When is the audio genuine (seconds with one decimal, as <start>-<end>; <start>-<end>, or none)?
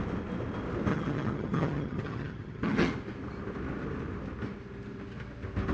0.0-0.9; 2.9-5.7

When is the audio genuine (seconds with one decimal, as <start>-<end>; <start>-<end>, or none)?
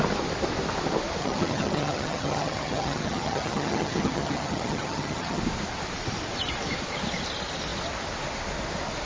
0.0-1.2; 5.4-9.1